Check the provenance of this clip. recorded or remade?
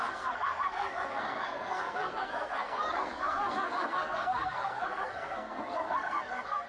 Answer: remade